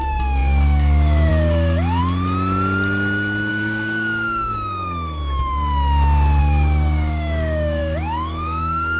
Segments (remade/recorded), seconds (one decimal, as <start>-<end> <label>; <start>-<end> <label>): 0.0-2.0 remade; 2.0-3.5 recorded; 3.5-5.2 remade; 5.2-6.4 recorded; 6.4-9.0 remade